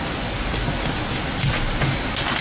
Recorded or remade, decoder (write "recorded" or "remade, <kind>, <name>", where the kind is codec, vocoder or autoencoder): recorded